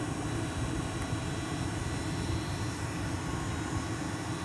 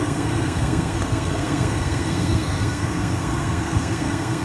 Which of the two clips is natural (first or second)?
first